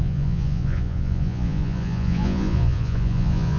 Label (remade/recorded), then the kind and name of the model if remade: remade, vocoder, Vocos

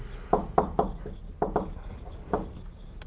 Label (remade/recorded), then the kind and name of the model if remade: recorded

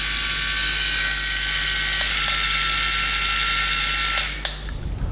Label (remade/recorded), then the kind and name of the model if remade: recorded